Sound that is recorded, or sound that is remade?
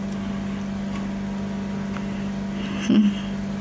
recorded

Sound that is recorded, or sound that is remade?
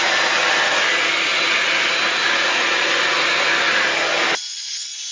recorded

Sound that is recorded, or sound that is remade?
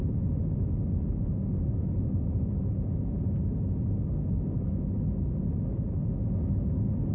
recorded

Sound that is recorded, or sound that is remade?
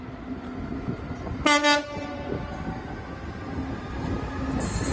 recorded